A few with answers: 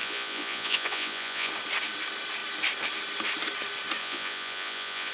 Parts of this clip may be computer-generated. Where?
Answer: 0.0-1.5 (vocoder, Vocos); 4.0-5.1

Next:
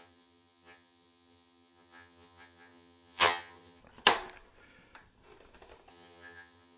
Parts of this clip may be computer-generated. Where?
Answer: 0.0-3.8 (vocoder, HiFi-GAN); 5.9-6.8

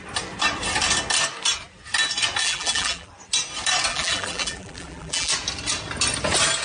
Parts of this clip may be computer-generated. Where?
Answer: 2.4-3.1 (vocoder, BigVGAN v2); 3.9-5.3